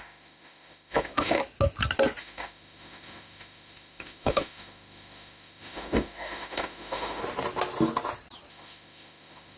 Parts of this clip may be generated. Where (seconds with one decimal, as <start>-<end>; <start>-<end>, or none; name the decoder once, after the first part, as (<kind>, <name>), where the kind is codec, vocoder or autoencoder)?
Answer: 0.0-1.4 (autoencoder, DAC-VAE); 2.2-7.2; 8.5-9.6